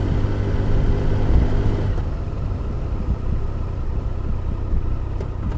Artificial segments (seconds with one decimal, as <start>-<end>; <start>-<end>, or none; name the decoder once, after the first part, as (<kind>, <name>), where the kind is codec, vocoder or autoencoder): none